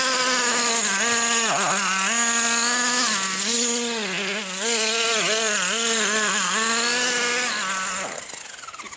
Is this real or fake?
real